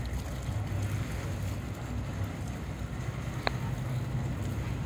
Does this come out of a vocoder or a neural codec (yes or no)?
no